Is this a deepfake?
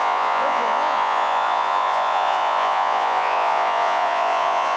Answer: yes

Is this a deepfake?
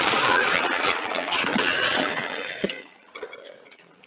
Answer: yes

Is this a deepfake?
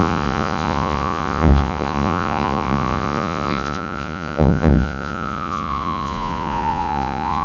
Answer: yes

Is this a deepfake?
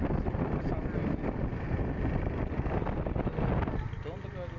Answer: no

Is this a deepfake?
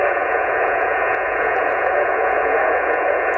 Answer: yes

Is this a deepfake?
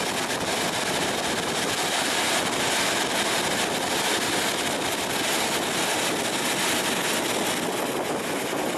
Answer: no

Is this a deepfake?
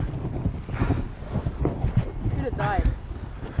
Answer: no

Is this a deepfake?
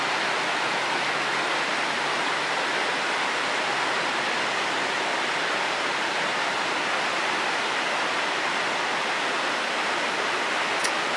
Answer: no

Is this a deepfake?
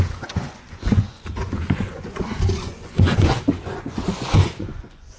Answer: yes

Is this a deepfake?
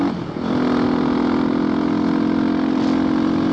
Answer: no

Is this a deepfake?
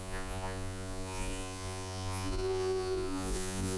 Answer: yes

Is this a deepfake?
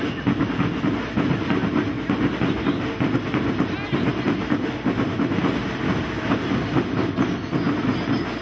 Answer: no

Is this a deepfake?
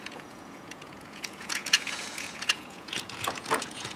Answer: yes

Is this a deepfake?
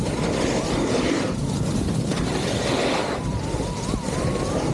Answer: no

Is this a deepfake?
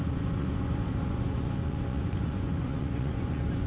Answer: yes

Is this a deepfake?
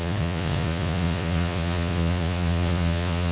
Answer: yes